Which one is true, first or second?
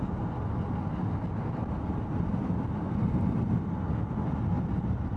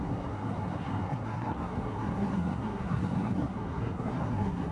first